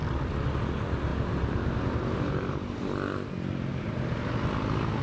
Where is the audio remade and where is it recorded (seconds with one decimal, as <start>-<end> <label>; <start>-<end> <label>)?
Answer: 0.0-1.1 recorded; 1.1-2.8 remade; 2.8-3.7 recorded; 3.7-4.3 remade; 4.3-5.0 recorded